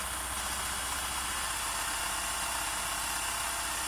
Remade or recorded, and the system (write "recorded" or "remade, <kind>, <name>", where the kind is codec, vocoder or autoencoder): recorded